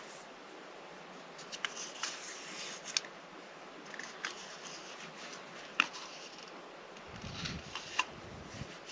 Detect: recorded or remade recorded